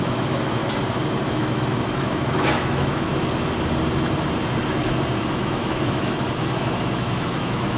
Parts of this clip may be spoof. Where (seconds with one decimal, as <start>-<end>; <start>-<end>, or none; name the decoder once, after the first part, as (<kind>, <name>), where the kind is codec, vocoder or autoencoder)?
0.0-0.6 (autoencoder, DAC-VAE); 1.2-3.1; 5.2-7.8